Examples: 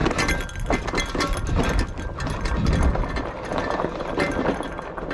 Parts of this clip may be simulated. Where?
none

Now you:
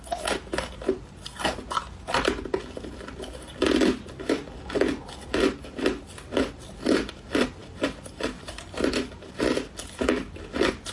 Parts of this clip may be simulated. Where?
none

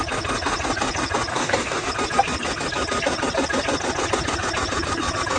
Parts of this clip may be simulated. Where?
1.3-1.9

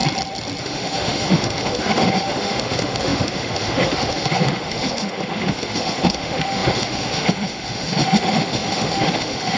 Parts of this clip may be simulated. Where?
0.6-9.6

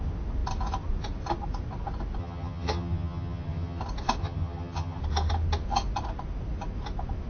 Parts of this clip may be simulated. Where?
2.2-3.8; 4.2-5.0

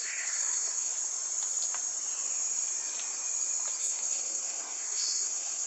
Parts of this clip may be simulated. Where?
0.0-0.9; 3.8-5.7

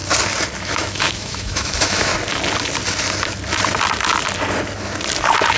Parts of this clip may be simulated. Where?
0.6-2.1

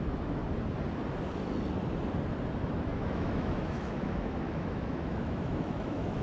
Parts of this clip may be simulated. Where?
0.0-0.4; 2.8-6.2